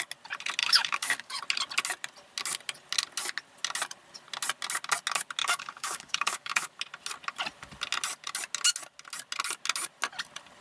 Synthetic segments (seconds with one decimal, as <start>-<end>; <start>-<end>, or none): 0.6-1.4; 5.4-6.8